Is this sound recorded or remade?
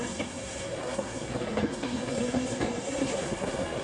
remade